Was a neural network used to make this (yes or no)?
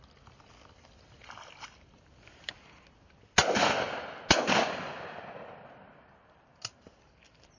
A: no